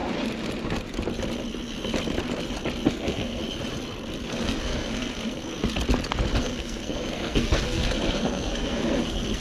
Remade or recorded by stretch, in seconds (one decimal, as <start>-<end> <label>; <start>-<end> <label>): 0.0-2.9 recorded; 2.9-3.4 remade; 3.4-4.2 recorded; 4.2-5.4 remade; 5.4-6.4 recorded; 6.4-9.4 remade